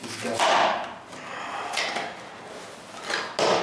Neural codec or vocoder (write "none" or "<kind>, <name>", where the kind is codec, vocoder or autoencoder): none